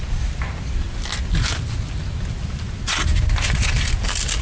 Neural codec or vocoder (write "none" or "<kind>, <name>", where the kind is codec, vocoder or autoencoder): none